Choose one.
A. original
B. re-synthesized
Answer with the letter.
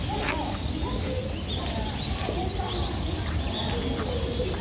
A